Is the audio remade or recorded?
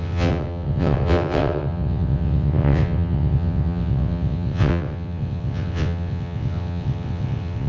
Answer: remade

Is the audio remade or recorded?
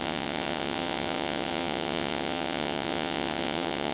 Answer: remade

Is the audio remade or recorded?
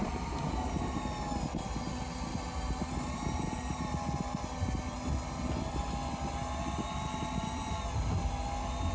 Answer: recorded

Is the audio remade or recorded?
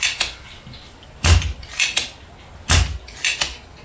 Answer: recorded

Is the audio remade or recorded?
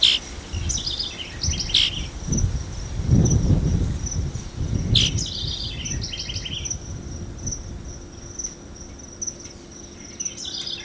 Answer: recorded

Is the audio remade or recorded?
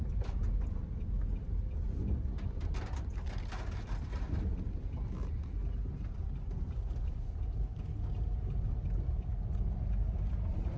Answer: recorded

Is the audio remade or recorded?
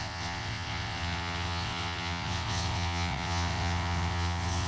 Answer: remade